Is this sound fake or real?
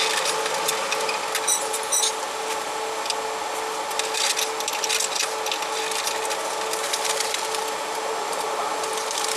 real